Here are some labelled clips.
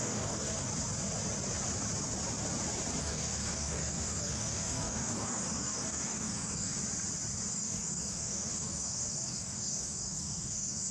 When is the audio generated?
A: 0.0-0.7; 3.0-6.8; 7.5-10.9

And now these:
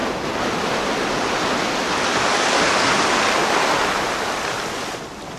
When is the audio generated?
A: 2.1-2.9

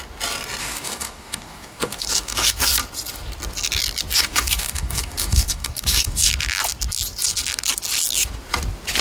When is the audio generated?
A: 0.6-2.8; 4.2-6.3

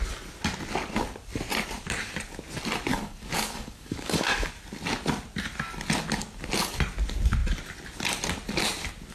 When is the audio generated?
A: 2.9-4.5